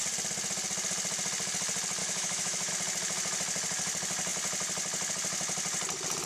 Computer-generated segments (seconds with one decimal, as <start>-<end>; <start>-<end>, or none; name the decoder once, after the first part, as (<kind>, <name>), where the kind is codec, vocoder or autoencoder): 2.0-2.7 (autoencoder, DAC-VAE)